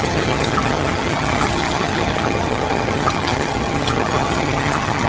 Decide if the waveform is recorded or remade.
remade